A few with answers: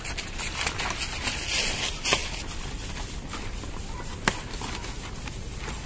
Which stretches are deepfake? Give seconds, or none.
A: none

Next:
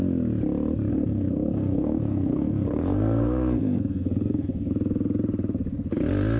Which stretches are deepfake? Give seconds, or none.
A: 0.9-4.7 (codec, SNAC)

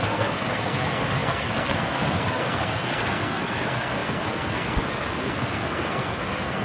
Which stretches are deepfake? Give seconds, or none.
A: 0.0-6.6 (codec, SNAC)

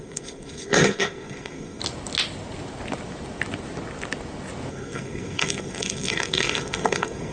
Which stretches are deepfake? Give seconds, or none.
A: 0.0-1.8 (codec, SNAC); 4.7-7.3

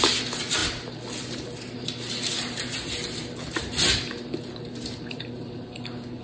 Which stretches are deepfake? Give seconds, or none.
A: none

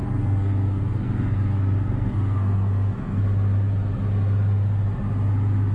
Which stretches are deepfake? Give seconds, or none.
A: 0.0-3.2 (codec, SNAC)

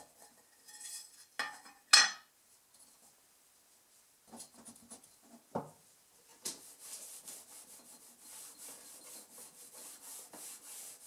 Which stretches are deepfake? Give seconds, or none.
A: none